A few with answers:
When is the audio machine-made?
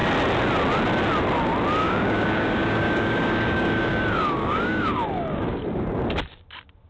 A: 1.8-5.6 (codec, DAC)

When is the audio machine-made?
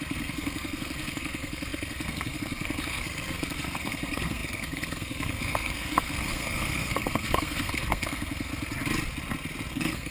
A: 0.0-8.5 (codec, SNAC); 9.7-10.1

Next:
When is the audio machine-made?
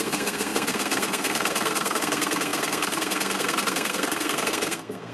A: 0.0-5.1 (codec, SNAC)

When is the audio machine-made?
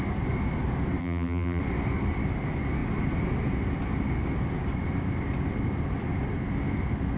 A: 1.0-1.6 (vocoder, BigVGAN v2)